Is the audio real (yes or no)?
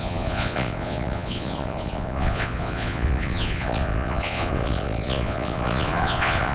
no